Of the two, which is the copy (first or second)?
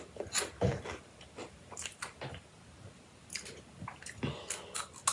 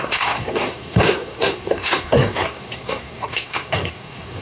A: second